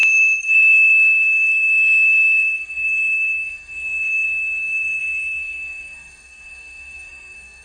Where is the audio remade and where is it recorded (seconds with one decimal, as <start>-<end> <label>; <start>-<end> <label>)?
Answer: 0.0-7.6 remade